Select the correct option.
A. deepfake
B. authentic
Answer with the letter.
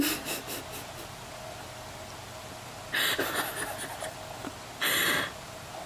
B